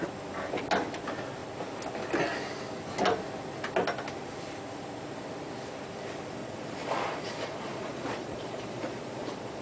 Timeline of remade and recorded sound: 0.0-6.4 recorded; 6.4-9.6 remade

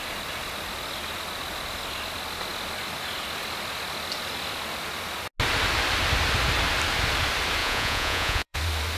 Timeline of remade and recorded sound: 0.0-7.6 recorded; 7.6-8.6 remade; 8.6-9.0 recorded

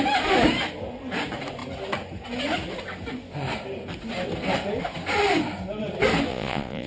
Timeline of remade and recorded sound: 0.0-6.3 recorded; 6.3-6.9 remade

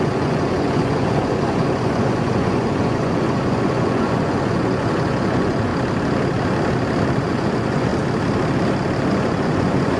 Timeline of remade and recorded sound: 0.0-5.7 remade; 5.7-7.2 recorded; 7.2-7.9 remade; 7.9-9.1 recorded; 9.1-10.0 remade

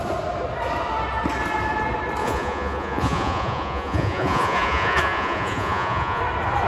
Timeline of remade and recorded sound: 0.0-2.2 recorded; 2.2-6.2 remade; 6.2-6.7 recorded

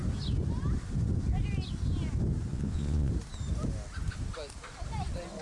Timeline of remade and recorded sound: 0.0-2.5 recorded; 2.5-3.1 remade; 3.1-5.4 recorded